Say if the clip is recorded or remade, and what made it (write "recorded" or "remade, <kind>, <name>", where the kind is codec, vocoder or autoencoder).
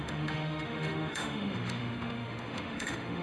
remade, autoencoder, DAC-VAE